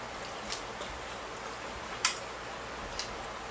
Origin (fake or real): real